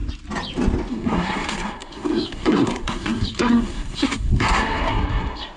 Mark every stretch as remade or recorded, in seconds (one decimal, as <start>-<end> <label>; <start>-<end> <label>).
0.0-0.9 recorded; 0.9-5.6 remade